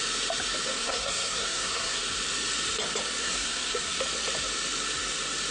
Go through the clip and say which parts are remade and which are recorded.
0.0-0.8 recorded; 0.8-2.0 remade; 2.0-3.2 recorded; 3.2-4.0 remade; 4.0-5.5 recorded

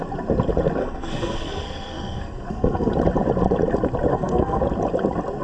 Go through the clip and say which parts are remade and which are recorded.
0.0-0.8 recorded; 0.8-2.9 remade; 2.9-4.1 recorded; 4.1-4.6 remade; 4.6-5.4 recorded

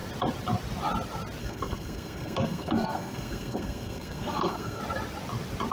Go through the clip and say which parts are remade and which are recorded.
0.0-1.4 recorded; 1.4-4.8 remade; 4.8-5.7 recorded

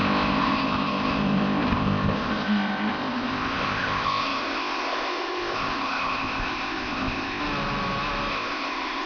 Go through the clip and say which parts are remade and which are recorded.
0.0-7.4 remade; 7.4-8.3 recorded; 8.3-9.1 remade

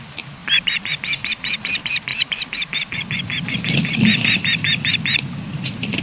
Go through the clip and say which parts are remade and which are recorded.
0.0-6.0 recorded

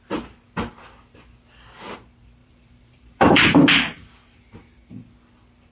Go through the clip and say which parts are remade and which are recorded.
0.0-2.4 recorded; 2.4-3.6 remade; 3.6-5.7 recorded

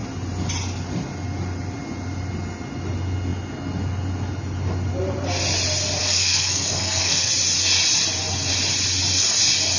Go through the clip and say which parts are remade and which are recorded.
0.0-6.0 recorded; 6.0-7.3 remade; 7.3-9.8 recorded

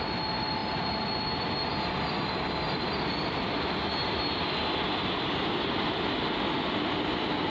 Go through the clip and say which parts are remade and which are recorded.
0.0-7.5 recorded